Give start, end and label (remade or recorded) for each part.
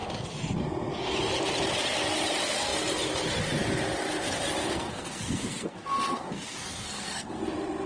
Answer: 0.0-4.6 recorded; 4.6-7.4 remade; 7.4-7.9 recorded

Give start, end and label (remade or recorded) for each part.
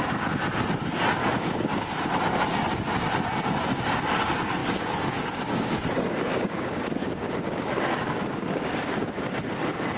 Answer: 0.0-1.2 recorded; 1.2-1.9 remade; 1.9-4.6 recorded; 4.6-9.1 remade; 9.1-10.0 recorded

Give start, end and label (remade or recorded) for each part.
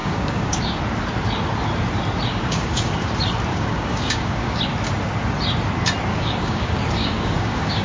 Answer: 0.0-0.8 remade; 0.8-2.3 recorded; 2.3-3.1 remade; 3.1-3.5 recorded; 3.5-4.6 remade; 4.6-6.1 recorded; 6.1-7.8 remade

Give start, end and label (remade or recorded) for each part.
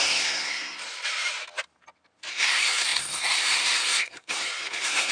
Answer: 0.0-0.8 remade; 0.8-2.3 recorded; 2.3-5.1 remade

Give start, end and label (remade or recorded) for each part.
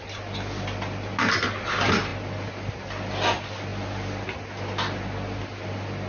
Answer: 0.0-6.1 recorded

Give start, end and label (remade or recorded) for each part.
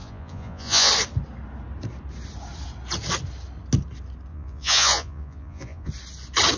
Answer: 0.0-0.9 remade; 0.9-4.3 recorded; 4.3-5.9 remade; 5.9-6.6 recorded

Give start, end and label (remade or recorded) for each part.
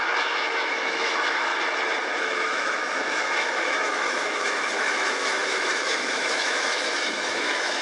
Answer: 0.0-1.5 remade; 1.5-2.2 recorded; 2.2-7.8 remade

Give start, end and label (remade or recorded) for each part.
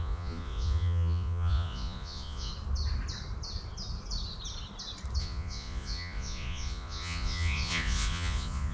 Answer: 0.0-2.5 remade; 2.5-5.2 recorded; 5.2-8.7 remade